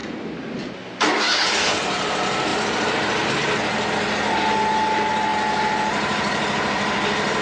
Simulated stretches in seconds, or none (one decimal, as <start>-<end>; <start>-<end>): 2.5-3.3; 5.3-7.4